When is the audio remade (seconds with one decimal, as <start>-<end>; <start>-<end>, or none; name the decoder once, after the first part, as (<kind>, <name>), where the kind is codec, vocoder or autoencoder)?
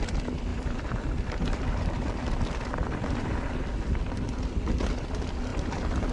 0.5-3.6 (vocoder, BigVGAN v2)